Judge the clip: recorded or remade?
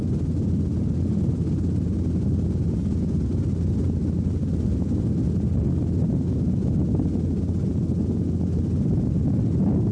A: recorded